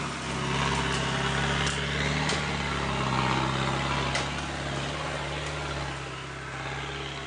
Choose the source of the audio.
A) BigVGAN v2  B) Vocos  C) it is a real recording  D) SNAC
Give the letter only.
C